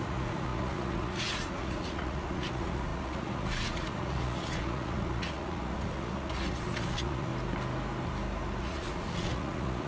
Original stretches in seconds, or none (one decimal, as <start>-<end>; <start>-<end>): 7.3-8.6